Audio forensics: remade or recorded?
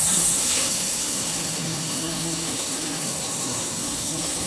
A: remade